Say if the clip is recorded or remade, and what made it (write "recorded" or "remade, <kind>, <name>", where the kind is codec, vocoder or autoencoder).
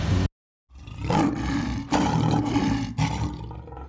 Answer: recorded